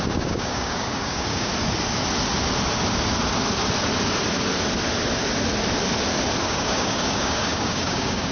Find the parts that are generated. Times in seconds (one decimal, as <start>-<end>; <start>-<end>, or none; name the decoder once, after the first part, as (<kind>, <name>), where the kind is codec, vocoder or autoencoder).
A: 0.0-1.5 (codec, DAC); 6.4-8.3